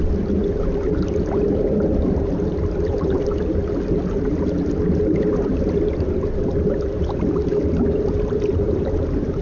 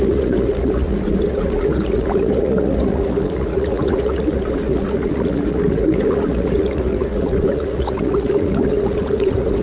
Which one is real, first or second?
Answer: first